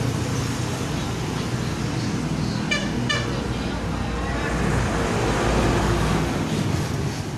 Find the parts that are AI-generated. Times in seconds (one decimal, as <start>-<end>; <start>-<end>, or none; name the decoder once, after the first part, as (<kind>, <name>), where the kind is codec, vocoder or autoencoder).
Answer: none